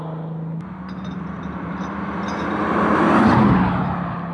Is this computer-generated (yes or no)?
no